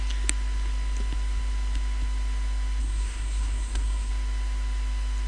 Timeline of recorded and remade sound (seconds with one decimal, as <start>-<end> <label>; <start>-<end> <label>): 0.0-2.8 recorded; 2.8-4.1 remade; 4.1-5.3 recorded